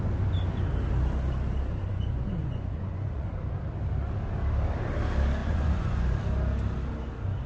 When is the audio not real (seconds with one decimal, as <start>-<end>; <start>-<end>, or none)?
1.9-3.3; 5.4-6.2